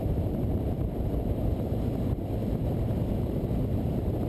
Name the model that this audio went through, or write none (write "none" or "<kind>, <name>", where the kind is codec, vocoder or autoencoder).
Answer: vocoder, BigVGAN v2